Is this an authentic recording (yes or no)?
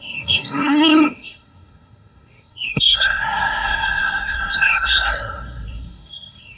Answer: no